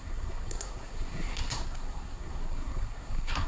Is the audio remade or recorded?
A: remade